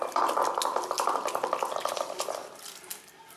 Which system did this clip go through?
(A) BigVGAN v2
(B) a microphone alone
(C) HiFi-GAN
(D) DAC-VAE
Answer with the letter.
B